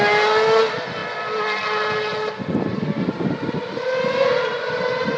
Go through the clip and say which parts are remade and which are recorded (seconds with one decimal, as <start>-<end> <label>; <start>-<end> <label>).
0.0-5.2 recorded